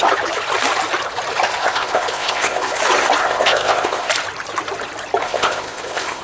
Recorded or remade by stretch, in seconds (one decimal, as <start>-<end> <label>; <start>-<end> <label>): 0.0-1.6 recorded; 1.6-2.8 remade; 2.8-3.2 recorded; 3.2-4.1 remade; 4.1-5.2 recorded; 5.2-6.2 remade